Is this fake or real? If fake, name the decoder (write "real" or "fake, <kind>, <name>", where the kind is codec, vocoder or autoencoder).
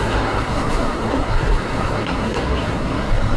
fake, codec, SNAC